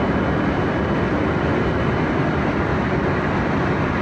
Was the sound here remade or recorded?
recorded